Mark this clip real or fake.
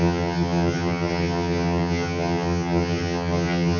fake